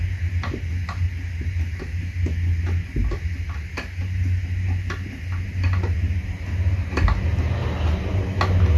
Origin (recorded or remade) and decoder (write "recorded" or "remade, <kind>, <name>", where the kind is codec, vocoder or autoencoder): recorded